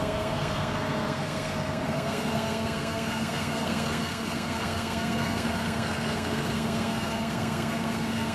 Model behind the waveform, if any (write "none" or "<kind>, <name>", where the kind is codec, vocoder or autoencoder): codec, SNAC